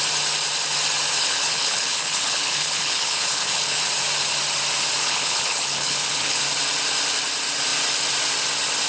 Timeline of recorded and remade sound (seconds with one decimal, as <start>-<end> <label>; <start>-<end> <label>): 0.0-1.1 recorded; 1.1-3.8 remade; 3.8-5.0 recorded; 5.0-6.4 remade; 6.4-8.9 recorded